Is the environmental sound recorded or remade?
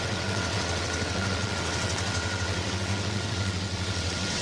remade